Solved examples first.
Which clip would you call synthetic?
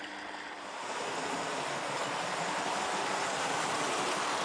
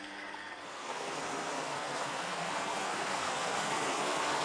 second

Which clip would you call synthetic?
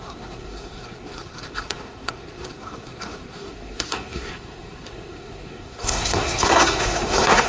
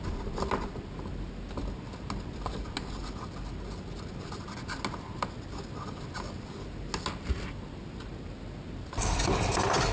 first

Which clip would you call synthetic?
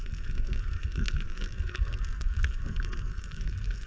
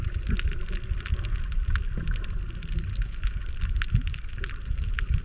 first